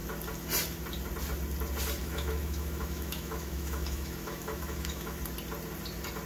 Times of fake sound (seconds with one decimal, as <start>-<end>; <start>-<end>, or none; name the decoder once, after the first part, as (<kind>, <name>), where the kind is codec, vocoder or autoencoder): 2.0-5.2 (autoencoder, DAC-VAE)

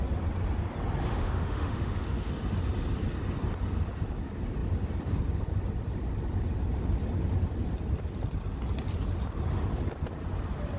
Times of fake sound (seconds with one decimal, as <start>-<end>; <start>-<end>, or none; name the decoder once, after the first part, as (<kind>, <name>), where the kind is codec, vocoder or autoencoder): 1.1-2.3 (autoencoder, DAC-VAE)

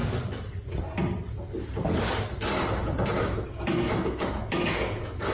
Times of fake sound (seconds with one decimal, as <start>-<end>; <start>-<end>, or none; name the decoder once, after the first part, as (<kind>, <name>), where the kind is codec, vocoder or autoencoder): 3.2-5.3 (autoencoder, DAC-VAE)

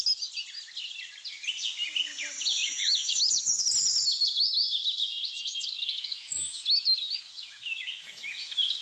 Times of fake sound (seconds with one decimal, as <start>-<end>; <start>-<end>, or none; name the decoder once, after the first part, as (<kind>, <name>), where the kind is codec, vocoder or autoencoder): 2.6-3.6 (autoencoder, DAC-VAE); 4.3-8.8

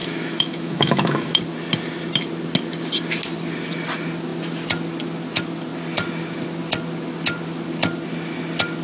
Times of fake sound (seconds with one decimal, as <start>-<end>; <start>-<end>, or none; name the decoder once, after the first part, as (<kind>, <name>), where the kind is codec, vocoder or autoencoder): 0.0-1.4 (autoencoder, DAC-VAE)

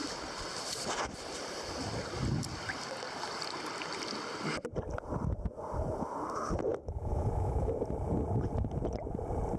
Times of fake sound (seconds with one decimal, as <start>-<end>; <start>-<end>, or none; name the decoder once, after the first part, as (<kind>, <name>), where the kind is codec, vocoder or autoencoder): 6.7-7.8 (autoencoder, DAC-VAE)